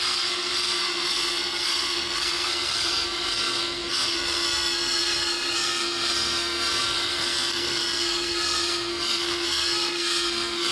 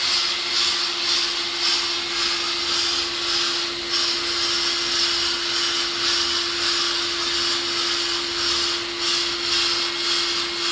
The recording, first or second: second